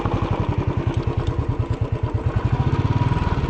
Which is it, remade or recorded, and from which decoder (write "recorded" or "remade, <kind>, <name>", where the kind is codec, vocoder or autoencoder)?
recorded